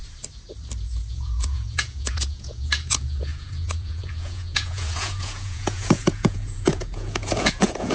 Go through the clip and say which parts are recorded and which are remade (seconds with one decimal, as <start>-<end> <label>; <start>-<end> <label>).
0.0-1.1 recorded; 1.1-7.9 remade

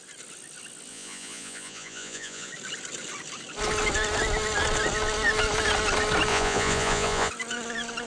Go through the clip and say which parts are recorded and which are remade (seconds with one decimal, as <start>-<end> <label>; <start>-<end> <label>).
0.0-0.9 recorded; 0.9-2.5 remade; 2.5-6.3 recorded; 6.3-7.3 remade; 7.3-8.1 recorded